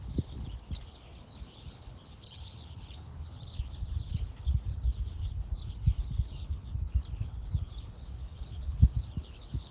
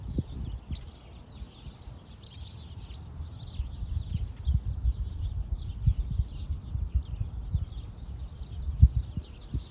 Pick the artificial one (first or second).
first